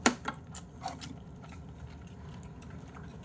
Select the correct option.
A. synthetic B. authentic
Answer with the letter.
A